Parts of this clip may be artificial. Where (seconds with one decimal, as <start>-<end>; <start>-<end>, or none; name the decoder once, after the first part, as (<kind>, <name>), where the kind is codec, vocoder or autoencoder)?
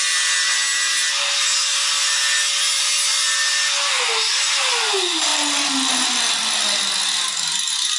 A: none